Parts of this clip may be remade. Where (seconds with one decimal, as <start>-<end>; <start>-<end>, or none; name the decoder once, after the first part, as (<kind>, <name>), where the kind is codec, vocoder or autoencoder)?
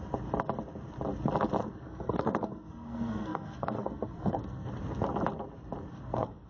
1.6-4.7 (codec, SNAC); 5.9-6.5